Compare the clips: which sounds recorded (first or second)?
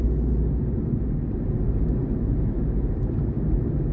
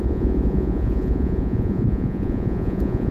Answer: first